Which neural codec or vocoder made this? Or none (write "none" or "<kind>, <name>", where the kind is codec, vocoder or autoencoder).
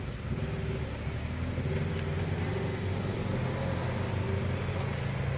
none